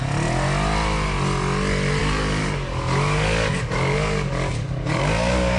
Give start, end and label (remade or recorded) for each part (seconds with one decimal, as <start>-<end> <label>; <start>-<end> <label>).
0.0-2.0 recorded; 2.0-5.6 remade